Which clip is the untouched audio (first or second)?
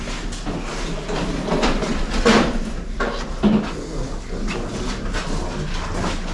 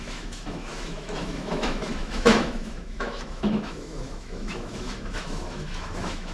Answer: first